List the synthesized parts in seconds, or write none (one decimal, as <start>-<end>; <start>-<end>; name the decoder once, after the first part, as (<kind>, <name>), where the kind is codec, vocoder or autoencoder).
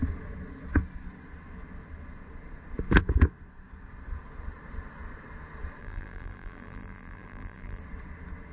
5.8-7.8 (vocoder, BigVGAN v2)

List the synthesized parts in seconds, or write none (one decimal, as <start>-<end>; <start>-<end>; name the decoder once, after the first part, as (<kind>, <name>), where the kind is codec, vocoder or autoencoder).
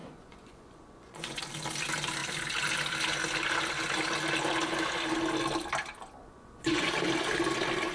0.0-1.4 (vocoder, Vocos); 6.2-6.9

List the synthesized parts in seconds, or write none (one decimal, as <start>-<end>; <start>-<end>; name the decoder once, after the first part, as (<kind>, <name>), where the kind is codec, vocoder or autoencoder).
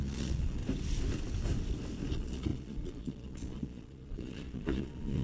0.0-0.6 (vocoder, Vocos); 2.1-5.2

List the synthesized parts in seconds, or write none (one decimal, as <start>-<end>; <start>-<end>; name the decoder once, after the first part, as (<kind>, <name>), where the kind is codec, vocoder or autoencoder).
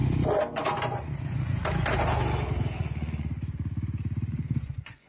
0.8-1.6 (vocoder, Vocos); 2.8-3.3; 4.3-5.1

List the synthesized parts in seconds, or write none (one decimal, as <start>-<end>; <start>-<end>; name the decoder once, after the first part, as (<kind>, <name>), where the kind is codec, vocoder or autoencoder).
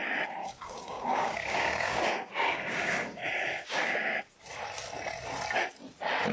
0.4-4.2 (codec, DAC)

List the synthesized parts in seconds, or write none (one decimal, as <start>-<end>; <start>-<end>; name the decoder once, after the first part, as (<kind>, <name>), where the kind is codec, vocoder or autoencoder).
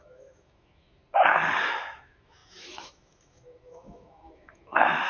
0.0-1.0 (autoencoder, DAC-VAE); 1.7-5.1